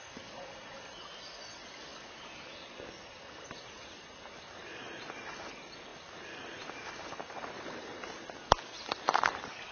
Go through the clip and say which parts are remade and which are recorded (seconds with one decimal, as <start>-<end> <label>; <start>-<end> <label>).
0.0-9.7 recorded